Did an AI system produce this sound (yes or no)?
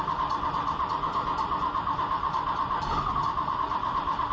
no